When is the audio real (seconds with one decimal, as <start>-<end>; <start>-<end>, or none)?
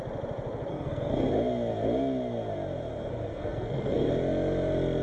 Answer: 0.0-0.7; 1.3-3.0; 4.1-5.0